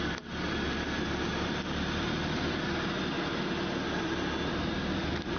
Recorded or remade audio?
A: recorded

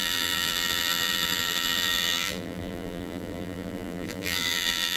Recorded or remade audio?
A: remade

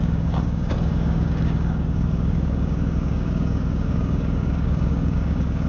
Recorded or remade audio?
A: remade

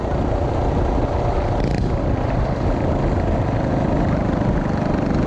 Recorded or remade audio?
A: recorded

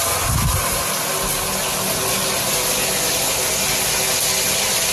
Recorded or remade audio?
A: recorded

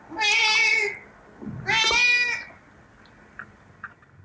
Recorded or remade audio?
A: recorded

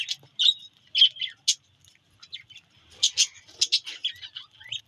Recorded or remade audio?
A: recorded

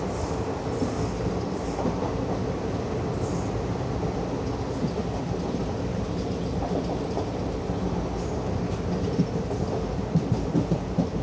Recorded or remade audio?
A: recorded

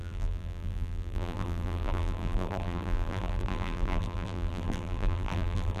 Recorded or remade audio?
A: remade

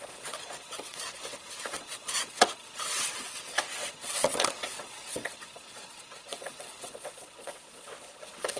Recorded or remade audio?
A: remade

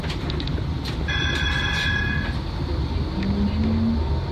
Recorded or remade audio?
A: recorded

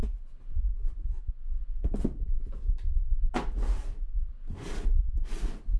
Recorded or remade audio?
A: recorded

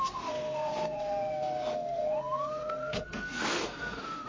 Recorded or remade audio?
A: remade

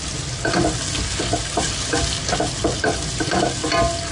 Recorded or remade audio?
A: recorded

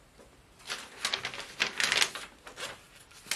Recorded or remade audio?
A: recorded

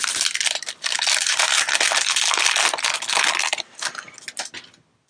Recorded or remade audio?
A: recorded